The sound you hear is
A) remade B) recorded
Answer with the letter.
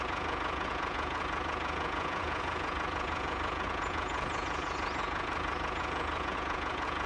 A